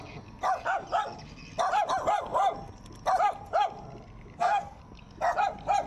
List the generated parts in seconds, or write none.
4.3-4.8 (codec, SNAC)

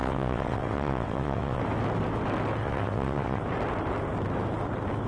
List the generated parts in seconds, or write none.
0.0-1.6 (vocoder, WaveNeXt); 2.6-3.4

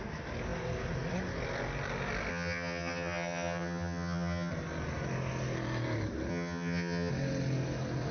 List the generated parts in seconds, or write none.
2.3-4.5 (vocoder, HiFi-GAN); 6.3-7.1

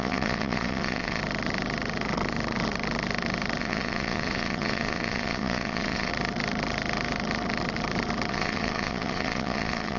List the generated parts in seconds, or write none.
0.0-1.2 (vocoder, WaveNeXt); 3.6-6.1; 8.3-10.0

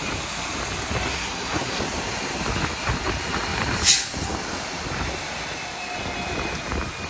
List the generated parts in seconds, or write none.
1.1-1.8 (codec, SNAC)